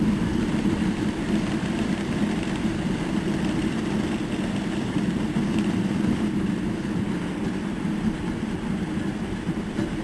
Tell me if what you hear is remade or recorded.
remade